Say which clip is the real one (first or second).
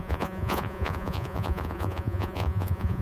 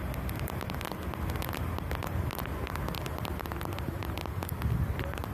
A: second